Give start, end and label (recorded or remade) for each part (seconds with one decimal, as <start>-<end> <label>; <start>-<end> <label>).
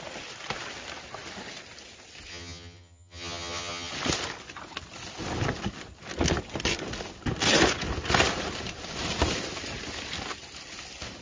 0.0-2.3 recorded; 2.3-3.9 remade; 3.9-11.2 recorded